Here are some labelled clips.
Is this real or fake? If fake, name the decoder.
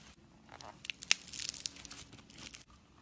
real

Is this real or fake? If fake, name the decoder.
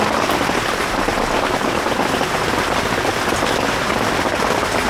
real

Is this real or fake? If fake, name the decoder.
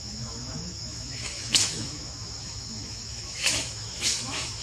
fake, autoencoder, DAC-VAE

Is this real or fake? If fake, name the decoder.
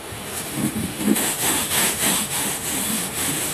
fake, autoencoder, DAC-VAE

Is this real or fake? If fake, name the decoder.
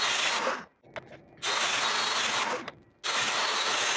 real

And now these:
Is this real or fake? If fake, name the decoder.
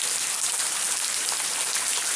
real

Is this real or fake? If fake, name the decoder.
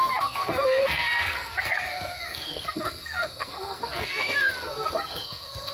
fake, codec, SNAC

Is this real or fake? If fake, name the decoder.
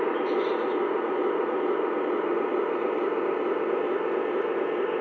real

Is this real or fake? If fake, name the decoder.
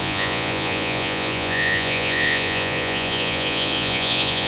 fake, vocoder, Vocos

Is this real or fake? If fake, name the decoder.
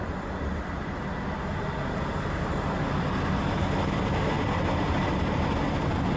real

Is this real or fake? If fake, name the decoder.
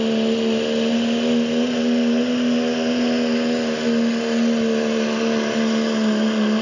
real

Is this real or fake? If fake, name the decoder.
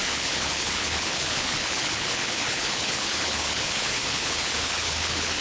fake, codec, HILCodec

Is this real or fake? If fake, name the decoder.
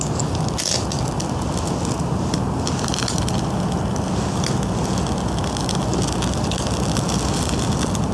real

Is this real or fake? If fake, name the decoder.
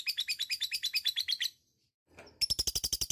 real